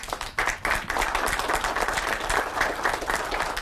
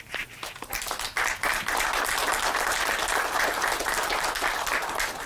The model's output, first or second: first